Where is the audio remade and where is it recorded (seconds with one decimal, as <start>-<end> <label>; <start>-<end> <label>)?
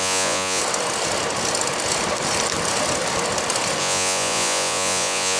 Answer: 0.0-0.6 remade; 0.6-3.8 recorded; 3.8-5.4 remade